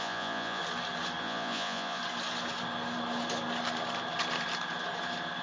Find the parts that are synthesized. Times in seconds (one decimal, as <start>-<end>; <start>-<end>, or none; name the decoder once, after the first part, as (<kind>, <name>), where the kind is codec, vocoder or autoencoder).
0.0-0.6 (vocoder, Vocos); 1.2-2.0